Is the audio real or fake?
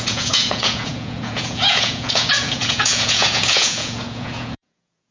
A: fake